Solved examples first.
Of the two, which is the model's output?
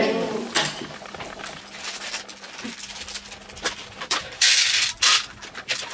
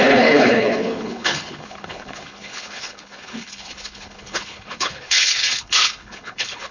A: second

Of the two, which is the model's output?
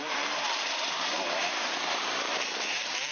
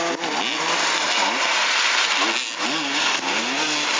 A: first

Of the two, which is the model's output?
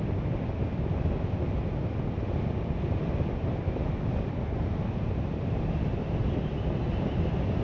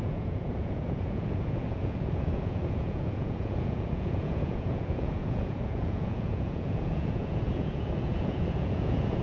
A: second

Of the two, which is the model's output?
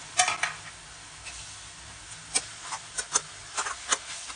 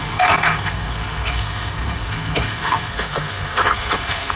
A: second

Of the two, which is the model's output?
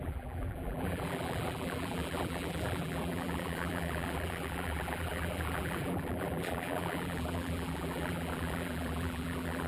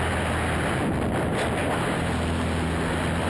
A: first